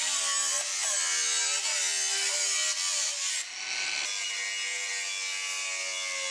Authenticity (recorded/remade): recorded